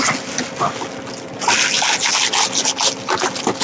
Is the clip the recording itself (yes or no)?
yes